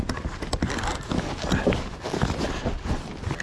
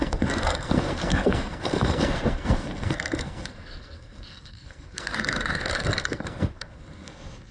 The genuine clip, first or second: first